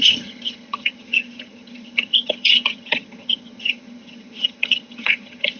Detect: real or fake fake